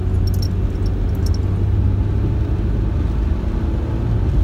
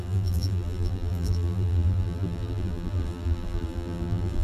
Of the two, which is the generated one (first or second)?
second